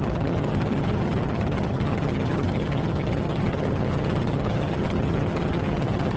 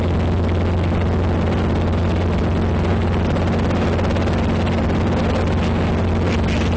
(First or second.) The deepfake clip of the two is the first